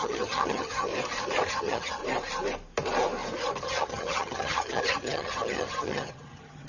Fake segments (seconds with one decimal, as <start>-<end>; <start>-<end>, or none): 0.0-0.9; 1.5-2.0; 3.6-6.7